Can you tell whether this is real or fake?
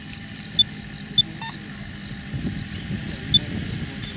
real